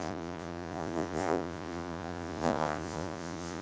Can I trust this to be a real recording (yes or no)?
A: no